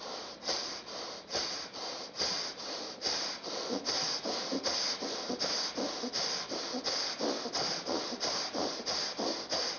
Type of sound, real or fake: real